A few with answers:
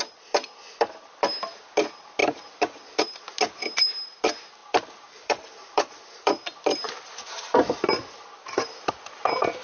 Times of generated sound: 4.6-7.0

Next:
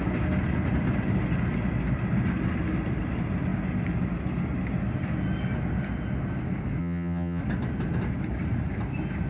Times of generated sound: 6.8-7.4

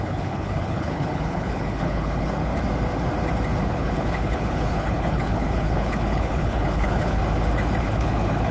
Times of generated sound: 0.0-2.5; 3.6-7.2; 7.8-8.5

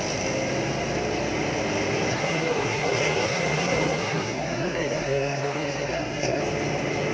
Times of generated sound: 2.1-6.4